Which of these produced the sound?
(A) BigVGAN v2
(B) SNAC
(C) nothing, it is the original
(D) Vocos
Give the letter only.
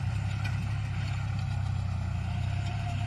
A